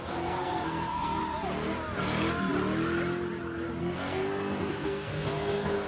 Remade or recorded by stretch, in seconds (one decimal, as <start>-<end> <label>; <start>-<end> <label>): 0.0-1.2 remade; 1.2-3.8 recorded; 3.8-5.9 remade